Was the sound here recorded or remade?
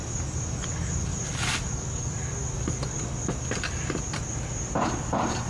recorded